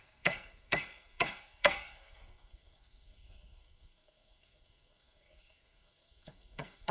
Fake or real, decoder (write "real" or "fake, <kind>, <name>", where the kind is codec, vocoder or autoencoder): fake, codec, SNAC